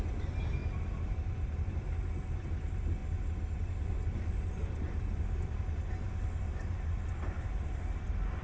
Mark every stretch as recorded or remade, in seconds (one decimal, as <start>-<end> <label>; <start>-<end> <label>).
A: 0.0-8.4 recorded

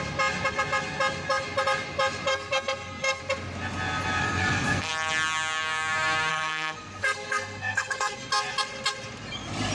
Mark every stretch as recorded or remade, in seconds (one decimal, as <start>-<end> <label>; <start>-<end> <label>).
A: 0.0-2.3 recorded; 2.3-3.2 remade; 3.2-4.2 recorded; 4.2-4.9 remade; 4.9-6.3 recorded; 6.3-8.3 remade; 8.3-9.7 recorded

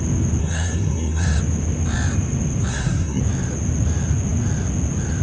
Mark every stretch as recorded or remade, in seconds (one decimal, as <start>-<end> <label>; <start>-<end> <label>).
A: 0.0-0.4 recorded; 0.4-1.4 remade; 1.4-2.7 recorded; 2.7-3.2 remade; 3.2-5.2 recorded

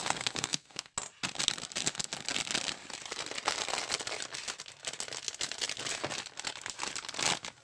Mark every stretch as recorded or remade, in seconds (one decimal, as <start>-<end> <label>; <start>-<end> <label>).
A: 0.0-0.9 remade; 0.9-7.6 recorded